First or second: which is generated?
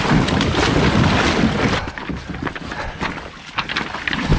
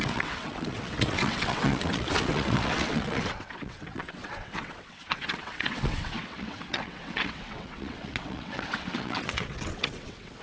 second